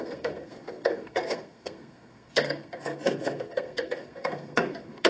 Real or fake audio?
fake